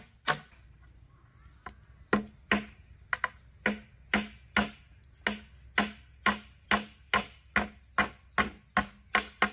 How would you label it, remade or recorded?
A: recorded